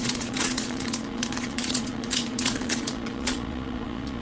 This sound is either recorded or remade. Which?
remade